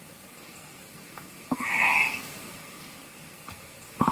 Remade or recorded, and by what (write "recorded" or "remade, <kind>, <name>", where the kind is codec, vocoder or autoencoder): remade, codec, SNAC